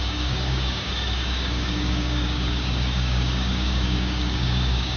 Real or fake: fake